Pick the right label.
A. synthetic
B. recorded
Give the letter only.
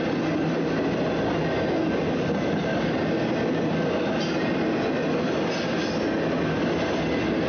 B